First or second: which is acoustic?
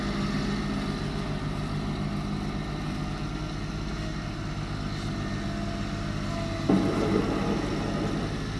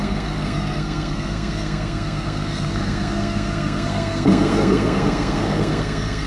first